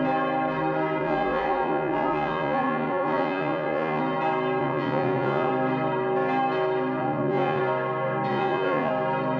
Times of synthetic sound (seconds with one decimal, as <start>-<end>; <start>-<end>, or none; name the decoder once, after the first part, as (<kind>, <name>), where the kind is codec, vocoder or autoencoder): 1.0-4.0 (vocoder, Vocos); 4.6-5.5; 7.0-7.6; 8.3-8.9